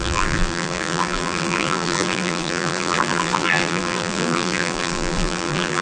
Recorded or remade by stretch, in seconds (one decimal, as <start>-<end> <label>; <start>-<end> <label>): 0.0-5.8 remade